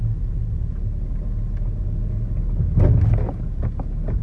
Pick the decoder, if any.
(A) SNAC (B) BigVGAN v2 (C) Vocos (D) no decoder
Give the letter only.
D